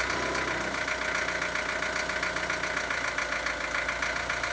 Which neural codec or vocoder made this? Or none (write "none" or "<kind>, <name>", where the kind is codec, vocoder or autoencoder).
none